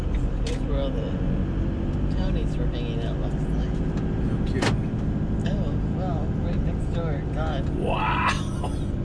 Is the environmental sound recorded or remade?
recorded